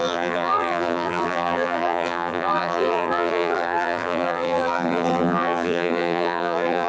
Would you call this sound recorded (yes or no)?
no